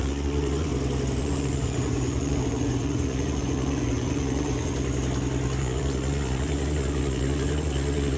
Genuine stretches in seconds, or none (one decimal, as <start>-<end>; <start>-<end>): 0.7-1.2; 4.7-5.6